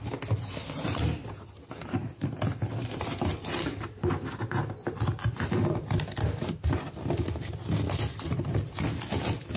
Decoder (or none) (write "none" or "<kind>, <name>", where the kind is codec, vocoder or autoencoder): none